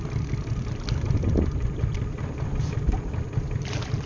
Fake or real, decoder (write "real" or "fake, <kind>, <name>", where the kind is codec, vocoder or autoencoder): real